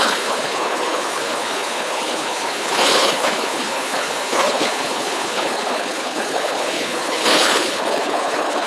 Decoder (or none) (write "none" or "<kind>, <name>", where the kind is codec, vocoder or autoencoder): codec, HILCodec